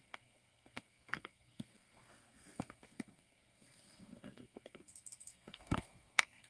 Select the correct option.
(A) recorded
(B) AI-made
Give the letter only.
B